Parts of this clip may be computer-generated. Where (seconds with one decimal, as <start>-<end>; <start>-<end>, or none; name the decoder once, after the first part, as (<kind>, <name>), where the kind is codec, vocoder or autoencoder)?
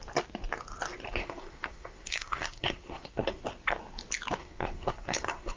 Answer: 1.2-3.4 (codec, SNAC); 4.4-5.6